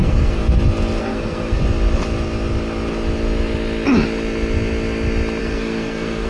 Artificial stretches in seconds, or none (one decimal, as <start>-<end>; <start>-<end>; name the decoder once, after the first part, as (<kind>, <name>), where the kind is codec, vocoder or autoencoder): 0.0-0.4 (codec, SNAC); 1.0-1.6; 5.4-6.3